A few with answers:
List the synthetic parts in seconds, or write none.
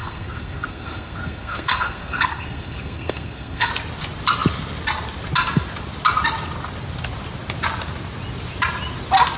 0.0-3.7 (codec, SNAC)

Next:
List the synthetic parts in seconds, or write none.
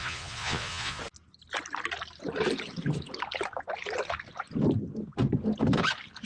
0.0-1.0 (vocoder, Vocos)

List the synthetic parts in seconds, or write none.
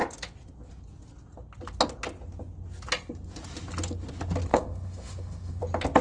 4.5-5.6 (autoencoder, DAC-VAE)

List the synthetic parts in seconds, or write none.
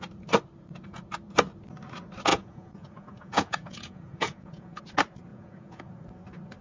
2.3-4.8 (vocoder, Vocos); 5.3-6.0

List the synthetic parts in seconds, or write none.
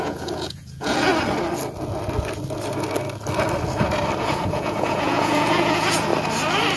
0.0-1.1 (vocoder, Vocos); 4.2-6.1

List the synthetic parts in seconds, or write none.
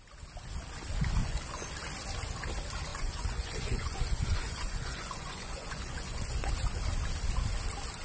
1.2-1.7 (vocoder, Vocos); 2.9-6.5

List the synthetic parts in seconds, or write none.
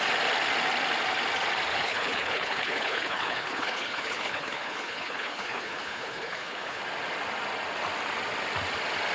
1.7-6.8 (codec, HILCodec)